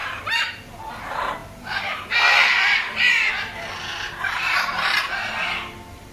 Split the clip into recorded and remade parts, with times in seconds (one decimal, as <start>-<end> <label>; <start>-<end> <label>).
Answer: 0.0-6.1 recorded